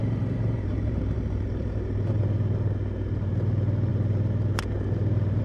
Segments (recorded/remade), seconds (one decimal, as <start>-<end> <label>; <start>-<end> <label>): 0.0-2.2 remade; 2.2-5.4 recorded